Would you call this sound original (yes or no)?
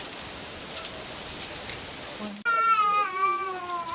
yes